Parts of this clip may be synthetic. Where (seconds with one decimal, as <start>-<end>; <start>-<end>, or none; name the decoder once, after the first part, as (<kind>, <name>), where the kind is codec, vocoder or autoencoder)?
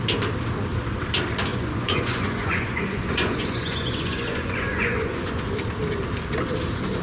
1.5-5.4 (vocoder, Vocos)